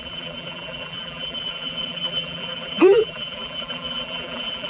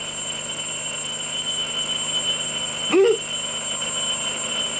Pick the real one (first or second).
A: second